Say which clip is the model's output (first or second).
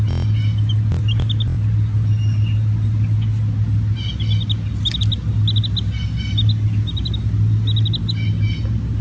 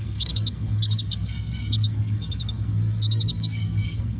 second